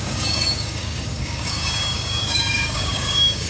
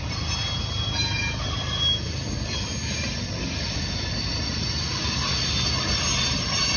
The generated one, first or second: first